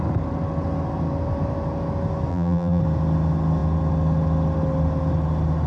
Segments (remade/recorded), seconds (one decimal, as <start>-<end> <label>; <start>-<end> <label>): 0.0-2.3 recorded; 2.3-2.8 remade; 2.8-5.7 recorded